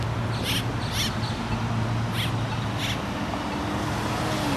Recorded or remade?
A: recorded